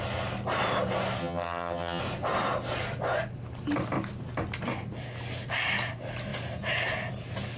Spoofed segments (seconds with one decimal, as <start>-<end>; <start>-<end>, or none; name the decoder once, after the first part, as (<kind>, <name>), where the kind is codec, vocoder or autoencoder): 1.2-2.0 (vocoder, HiFi-GAN)